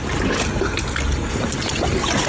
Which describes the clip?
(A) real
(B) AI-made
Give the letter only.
A